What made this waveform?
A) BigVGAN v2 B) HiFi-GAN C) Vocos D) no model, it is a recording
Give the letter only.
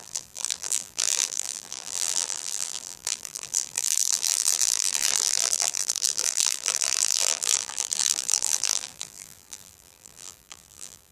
A